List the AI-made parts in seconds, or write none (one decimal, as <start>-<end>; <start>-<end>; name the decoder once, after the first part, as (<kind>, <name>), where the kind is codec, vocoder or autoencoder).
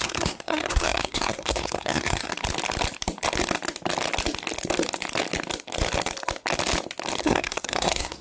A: 0.0-2.3 (codec, SNAC); 7.2-8.2